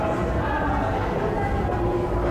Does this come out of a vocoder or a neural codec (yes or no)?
no